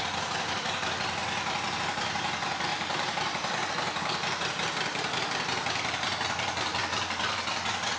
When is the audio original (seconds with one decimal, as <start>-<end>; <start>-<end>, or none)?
0.0-2.7; 3.7-8.0